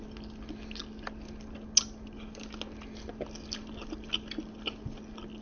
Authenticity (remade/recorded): recorded